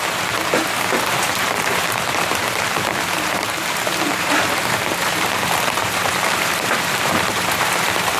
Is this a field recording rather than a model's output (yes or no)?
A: no